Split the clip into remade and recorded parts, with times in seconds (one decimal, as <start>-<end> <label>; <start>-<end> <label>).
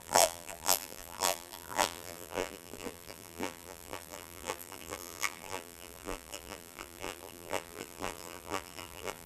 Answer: 0.0-9.3 remade